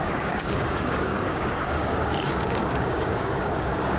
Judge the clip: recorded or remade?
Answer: remade